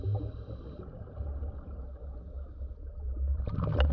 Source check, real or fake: real